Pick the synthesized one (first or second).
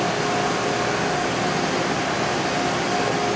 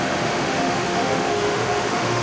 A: second